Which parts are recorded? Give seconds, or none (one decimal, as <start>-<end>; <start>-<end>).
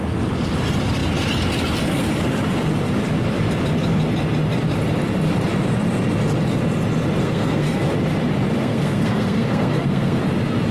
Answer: 0.0-7.2; 7.8-8.6; 10.2-10.7